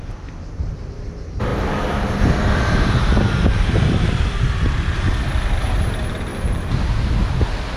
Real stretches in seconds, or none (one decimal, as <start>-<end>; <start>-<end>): 0.0-1.5; 4.1-6.3; 7.1-7.8